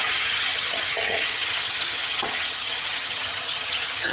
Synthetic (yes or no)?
yes